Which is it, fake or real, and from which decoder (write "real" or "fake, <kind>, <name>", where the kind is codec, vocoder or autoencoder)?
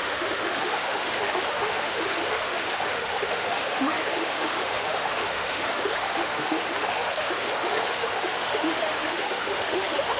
fake, autoencoder, DAC-VAE